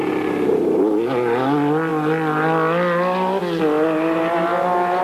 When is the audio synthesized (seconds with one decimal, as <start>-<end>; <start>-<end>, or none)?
none